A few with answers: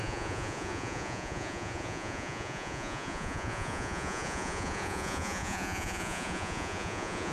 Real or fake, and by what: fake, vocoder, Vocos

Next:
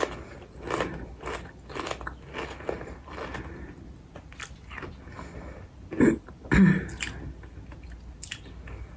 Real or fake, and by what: real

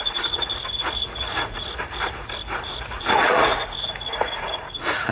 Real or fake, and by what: fake, vocoder, Vocos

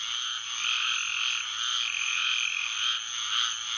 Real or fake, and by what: real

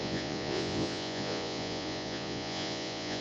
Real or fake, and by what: fake, vocoder, Vocos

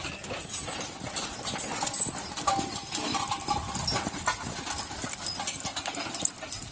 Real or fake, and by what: real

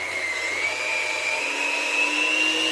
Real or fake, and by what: real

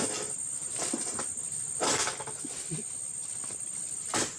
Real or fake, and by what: real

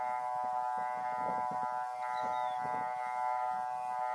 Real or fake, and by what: real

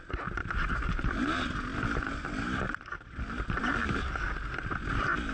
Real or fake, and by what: real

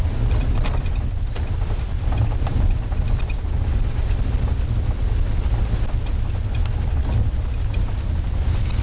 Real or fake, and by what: real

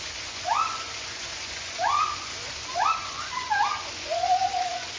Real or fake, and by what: fake, vocoder, Vocos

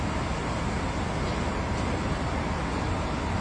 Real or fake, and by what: real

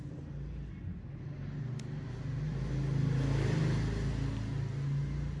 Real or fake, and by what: real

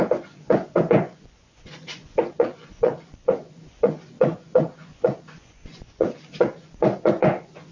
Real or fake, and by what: fake, vocoder, Vocos